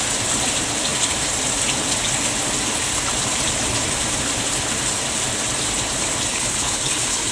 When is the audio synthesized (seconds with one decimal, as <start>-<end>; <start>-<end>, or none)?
6.3-7.3